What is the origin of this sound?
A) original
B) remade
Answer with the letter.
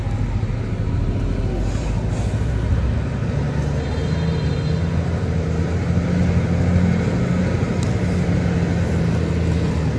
A